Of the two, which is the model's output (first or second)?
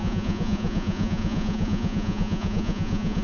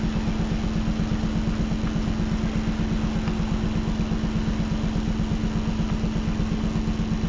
first